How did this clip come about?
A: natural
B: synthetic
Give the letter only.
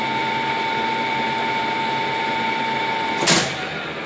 A